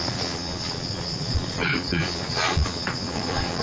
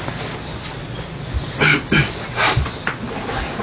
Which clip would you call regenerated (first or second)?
first